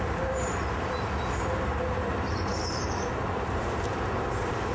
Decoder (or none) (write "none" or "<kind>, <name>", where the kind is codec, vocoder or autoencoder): vocoder, BigVGAN v2